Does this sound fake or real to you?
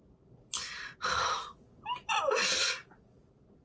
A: real